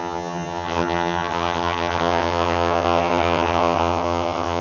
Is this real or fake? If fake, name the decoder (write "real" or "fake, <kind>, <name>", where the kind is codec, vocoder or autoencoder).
fake, vocoder, HiFi-GAN